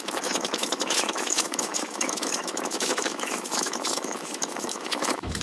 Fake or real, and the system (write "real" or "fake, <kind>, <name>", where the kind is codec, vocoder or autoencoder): fake, autoencoder, DAC-VAE